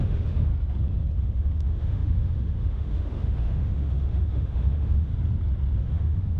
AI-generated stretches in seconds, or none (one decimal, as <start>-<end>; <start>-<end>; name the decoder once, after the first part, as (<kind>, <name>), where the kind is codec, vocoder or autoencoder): 0.0-0.5 (autoencoder, DAC-VAE); 1.2-5.1; 5.8-6.4